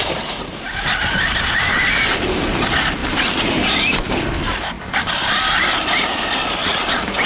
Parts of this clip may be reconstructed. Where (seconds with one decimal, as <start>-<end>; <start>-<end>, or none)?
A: 0.0-1.8